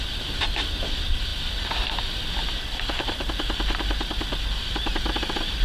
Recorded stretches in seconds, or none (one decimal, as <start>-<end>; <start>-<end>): 0.0-5.6